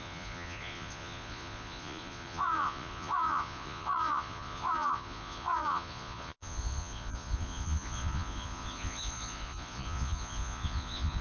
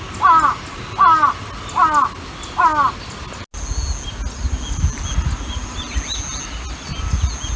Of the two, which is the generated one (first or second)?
first